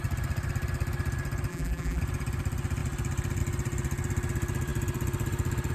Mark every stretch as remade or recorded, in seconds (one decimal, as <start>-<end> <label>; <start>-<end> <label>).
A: 0.0-1.5 recorded; 1.5-2.0 remade; 2.0-5.7 recorded